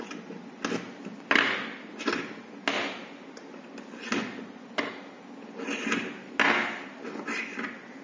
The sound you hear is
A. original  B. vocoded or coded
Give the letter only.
A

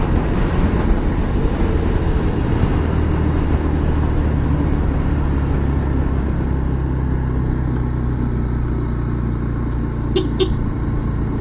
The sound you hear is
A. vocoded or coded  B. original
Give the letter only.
B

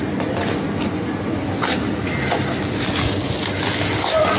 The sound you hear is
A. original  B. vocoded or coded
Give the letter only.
A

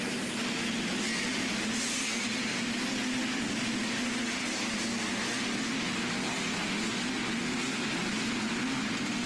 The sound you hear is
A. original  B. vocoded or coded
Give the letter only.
A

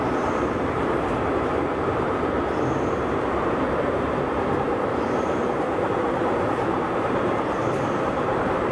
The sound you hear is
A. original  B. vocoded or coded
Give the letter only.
B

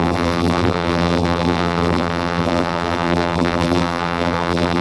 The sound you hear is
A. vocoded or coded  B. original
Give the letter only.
A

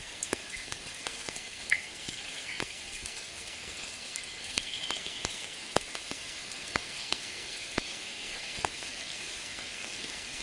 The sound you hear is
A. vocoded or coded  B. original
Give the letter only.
A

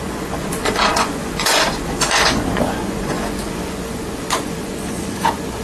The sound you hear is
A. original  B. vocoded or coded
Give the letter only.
B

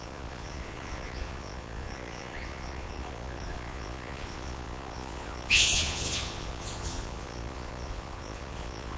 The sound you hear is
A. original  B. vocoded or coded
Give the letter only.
B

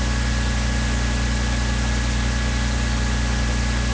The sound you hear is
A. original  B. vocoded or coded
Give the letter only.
A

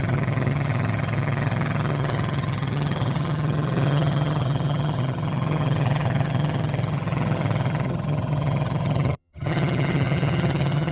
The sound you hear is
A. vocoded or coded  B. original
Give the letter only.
A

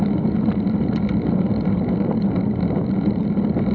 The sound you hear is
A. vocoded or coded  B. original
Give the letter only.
B